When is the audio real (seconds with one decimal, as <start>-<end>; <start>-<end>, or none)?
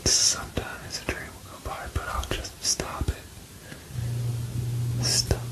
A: 0.0-5.5